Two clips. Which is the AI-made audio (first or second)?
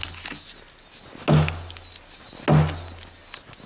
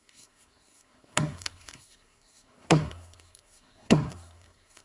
second